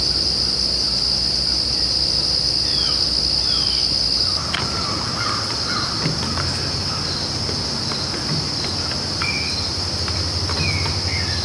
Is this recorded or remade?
recorded